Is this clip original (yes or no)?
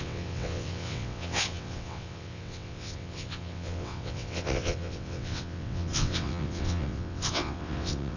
no